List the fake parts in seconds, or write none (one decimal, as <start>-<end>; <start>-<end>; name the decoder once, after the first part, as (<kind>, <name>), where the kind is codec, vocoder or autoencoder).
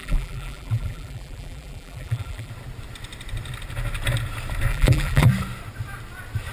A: 0.0-2.5 (vocoder, BigVGAN v2); 4.7-5.3